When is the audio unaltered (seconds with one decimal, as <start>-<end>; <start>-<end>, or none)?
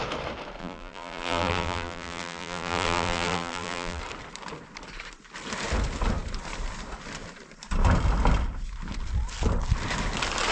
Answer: 0.0-0.6; 4.0-10.5